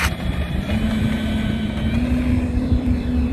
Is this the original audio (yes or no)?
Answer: no